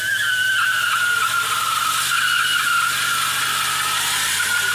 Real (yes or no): yes